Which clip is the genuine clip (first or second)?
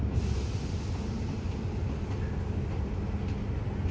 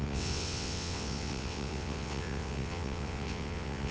first